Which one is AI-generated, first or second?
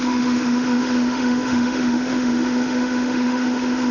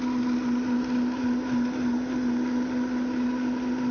first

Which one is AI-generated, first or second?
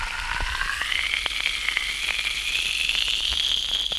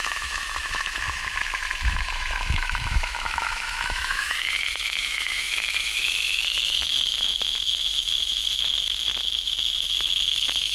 second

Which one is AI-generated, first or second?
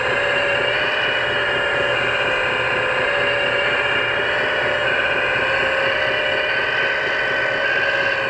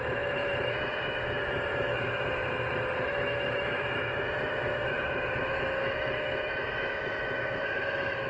second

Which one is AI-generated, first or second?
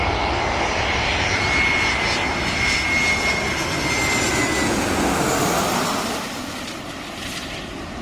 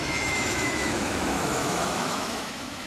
second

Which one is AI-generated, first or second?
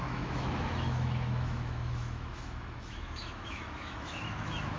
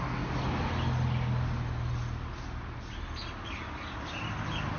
first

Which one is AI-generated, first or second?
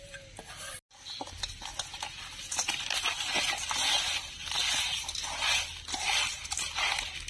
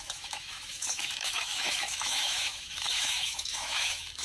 second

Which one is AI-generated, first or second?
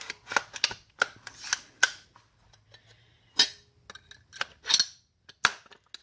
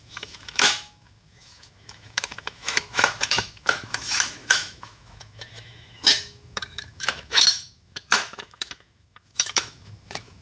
second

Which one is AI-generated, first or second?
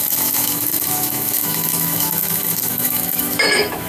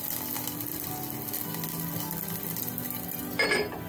first